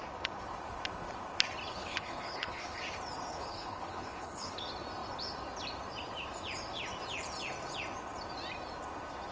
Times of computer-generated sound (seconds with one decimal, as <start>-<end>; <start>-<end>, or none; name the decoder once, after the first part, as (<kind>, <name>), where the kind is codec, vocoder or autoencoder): 1.7-2.8 (codec, HILCodec); 3.3-4.6